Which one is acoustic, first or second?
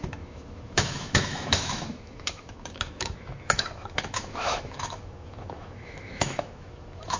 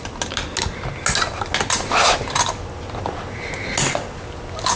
second